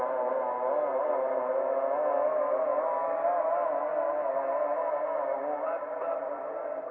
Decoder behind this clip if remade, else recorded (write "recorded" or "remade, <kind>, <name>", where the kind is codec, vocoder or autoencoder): recorded